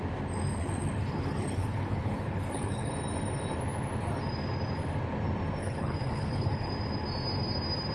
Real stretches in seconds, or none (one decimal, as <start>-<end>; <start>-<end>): 0.0-0.5; 2.9-5.6; 6.7-7.9